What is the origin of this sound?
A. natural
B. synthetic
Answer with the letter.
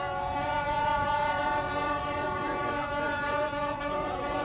B